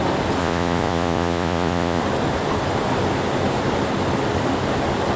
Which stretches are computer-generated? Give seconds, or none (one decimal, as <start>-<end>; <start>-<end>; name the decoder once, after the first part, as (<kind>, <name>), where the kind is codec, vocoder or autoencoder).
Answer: 0.4-2.0 (vocoder, Vocos)